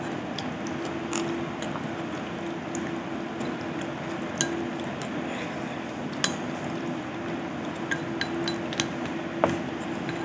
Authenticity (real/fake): real